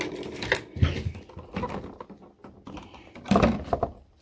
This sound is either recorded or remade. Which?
recorded